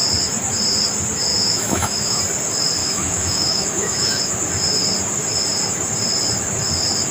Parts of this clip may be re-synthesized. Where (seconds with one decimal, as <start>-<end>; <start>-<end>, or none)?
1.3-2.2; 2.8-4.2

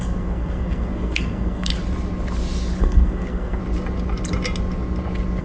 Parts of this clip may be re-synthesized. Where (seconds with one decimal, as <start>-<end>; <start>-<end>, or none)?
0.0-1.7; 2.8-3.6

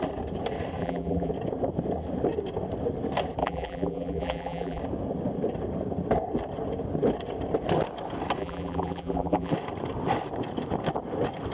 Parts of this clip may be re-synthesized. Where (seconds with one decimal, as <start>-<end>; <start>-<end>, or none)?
0.8-1.3; 3.4-4.8; 8.4-9.5

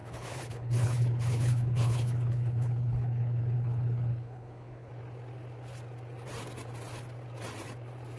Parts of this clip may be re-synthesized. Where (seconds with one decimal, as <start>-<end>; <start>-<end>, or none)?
0.0-4.9